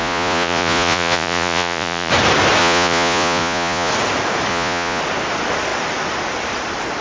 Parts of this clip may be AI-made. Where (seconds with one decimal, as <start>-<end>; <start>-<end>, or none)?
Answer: 0.0-2.1; 2.6-3.9; 4.5-5.0

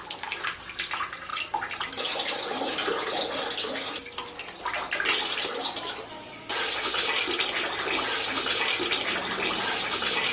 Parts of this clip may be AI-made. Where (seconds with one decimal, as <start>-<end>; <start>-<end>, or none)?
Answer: none

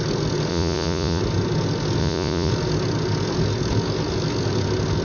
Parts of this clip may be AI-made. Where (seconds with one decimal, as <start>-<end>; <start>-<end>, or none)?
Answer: 0.5-1.2; 2.0-2.5

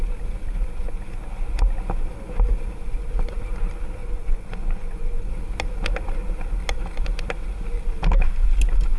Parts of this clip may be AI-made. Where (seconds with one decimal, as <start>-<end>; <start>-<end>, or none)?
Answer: 4.0-5.3

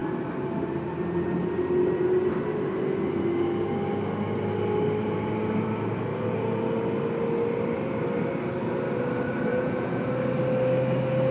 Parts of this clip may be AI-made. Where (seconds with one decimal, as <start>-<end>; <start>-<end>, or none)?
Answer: 9.5-10.1

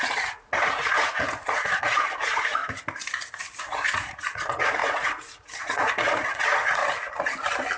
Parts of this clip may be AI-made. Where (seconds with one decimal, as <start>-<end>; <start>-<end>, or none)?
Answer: 0.0-2.6; 3.6-6.8